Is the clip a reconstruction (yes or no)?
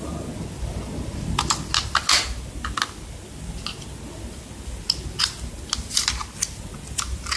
no